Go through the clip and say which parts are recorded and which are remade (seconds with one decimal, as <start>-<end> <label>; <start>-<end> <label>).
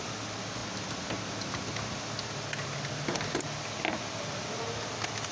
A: 0.0-5.3 recorded